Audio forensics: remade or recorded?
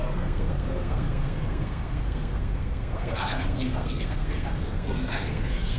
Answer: remade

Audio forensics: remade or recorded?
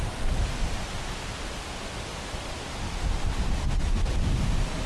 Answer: recorded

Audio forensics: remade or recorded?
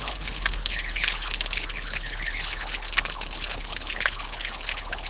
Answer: remade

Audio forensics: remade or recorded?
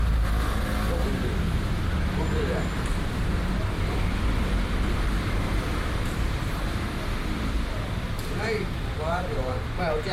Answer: remade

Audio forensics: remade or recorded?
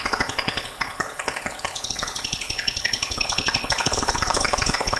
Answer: remade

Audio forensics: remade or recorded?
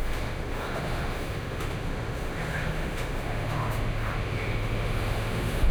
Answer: remade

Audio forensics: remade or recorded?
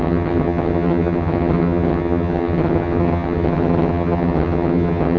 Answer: remade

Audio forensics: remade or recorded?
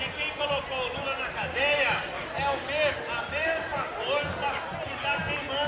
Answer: recorded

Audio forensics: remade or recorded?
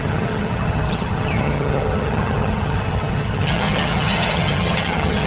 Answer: remade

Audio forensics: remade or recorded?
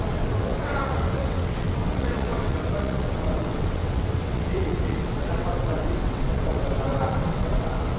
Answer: remade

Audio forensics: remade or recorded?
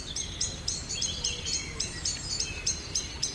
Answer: recorded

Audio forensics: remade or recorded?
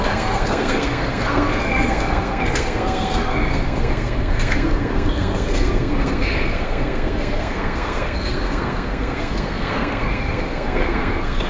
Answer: remade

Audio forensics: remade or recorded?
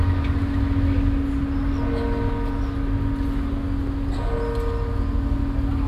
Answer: recorded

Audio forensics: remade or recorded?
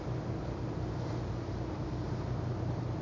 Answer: recorded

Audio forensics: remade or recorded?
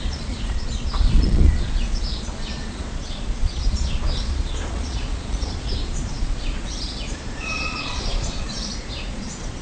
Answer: remade